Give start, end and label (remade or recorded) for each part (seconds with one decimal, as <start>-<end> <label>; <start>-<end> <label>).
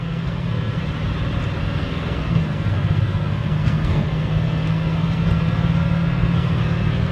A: 0.0-0.8 remade; 0.8-1.6 recorded; 1.6-7.1 remade